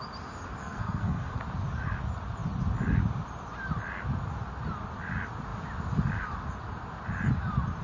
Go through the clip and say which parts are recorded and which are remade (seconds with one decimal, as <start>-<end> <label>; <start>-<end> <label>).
0.0-0.6 recorded; 0.6-1.4 remade; 1.4-7.8 recorded